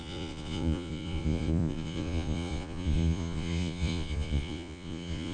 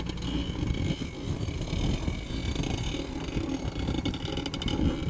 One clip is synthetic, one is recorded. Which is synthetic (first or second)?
first